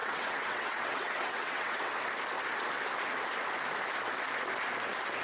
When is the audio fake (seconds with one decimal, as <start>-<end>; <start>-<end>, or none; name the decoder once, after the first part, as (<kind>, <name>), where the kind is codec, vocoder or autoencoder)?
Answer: 0.0-1.9 (vocoder, WaveNeXt)